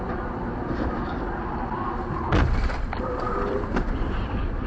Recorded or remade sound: remade